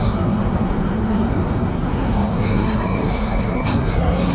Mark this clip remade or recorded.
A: remade